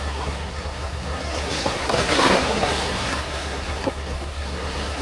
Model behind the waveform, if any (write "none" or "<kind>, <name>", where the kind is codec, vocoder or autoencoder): codec, SNAC